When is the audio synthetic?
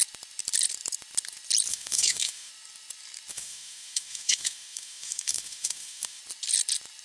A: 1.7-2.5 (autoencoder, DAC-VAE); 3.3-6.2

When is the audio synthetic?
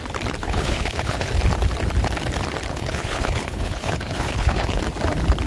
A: 0.4-1.3 (codec, HILCodec); 2.7-4.8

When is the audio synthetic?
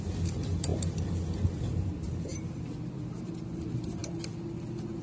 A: 0.0-0.7 (vocoder, BigVGAN v2); 1.6-4.0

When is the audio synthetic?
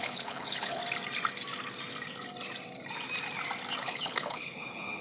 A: 0.0-0.8 (codec, HILCodec); 3.8-5.0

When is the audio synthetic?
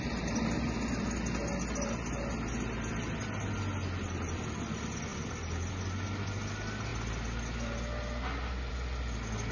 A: none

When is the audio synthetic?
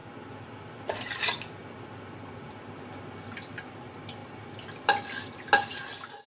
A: none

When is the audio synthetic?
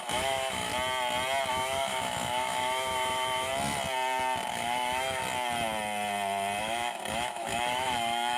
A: 0.0-0.7 (autoencoder, DAC-VAE); 1.5-3.5; 4.5-5.2; 6.6-8.4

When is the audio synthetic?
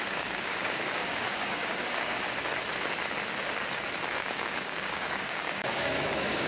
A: 0.0-2.1 (codec, DAC); 4.1-6.5